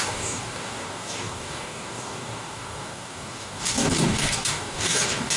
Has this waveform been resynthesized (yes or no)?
yes